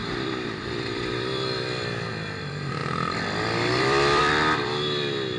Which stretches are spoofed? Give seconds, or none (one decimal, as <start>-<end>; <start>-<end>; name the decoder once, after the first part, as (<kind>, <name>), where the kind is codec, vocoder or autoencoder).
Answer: 0.0-5.4 (vocoder, BigVGAN v2)